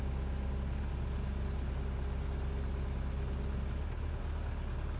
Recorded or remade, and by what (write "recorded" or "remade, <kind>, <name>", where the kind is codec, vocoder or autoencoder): recorded